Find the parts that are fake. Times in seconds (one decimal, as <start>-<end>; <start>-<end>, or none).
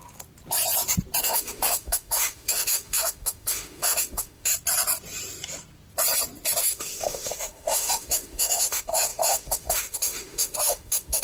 1.2-4.5; 6.6-11.2